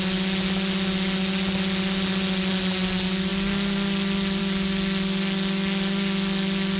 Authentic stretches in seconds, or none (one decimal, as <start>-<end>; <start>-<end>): 0.0-6.8

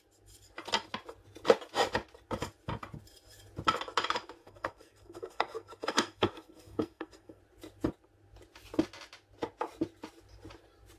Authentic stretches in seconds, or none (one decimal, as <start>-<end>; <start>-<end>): 0.0-4.4; 7.4-11.0

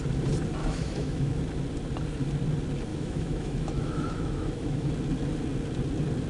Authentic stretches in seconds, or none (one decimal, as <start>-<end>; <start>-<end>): 0.0-0.6; 1.4-2.9; 4.9-6.3

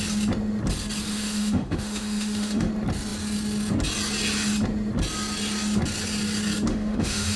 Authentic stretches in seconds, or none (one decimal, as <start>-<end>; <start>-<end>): 0.0-1.1; 2.7-6.7

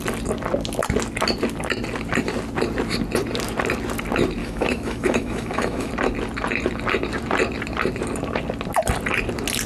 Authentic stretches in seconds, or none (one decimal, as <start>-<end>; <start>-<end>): 0.0-4.4; 5.9-9.7

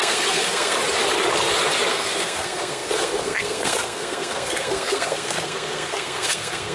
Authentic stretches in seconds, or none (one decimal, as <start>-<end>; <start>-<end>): 0.8-1.9

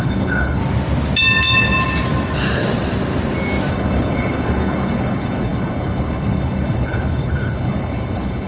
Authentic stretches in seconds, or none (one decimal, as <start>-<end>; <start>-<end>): 0.6-3.7